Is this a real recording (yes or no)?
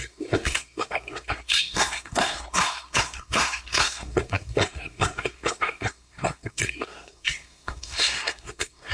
no